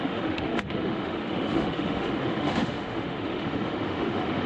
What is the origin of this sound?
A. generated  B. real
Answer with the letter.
A